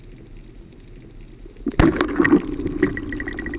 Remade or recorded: recorded